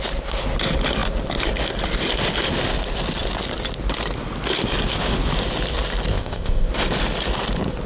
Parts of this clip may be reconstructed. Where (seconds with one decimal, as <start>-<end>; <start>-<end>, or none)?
6.1-6.7